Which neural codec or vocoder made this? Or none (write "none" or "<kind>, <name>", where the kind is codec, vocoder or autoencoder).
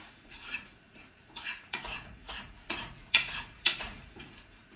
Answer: vocoder, Vocos